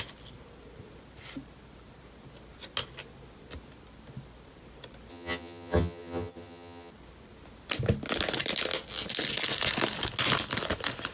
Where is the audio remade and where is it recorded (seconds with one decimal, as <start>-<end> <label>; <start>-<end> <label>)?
0.0-5.1 recorded; 5.1-6.9 remade; 6.9-11.1 recorded